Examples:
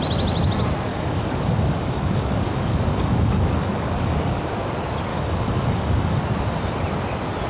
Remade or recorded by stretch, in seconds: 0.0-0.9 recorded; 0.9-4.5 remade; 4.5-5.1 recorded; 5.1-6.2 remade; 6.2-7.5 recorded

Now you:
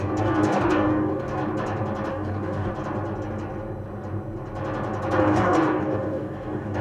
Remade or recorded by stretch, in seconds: 0.0-1.4 remade; 1.4-2.1 recorded; 2.1-2.7 remade; 2.7-5.2 recorded; 5.2-6.8 remade

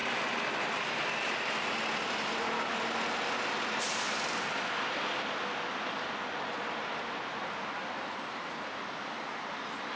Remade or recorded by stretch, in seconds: 0.0-10.0 recorded

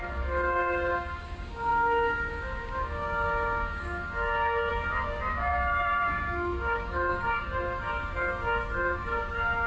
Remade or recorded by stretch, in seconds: 0.0-9.7 remade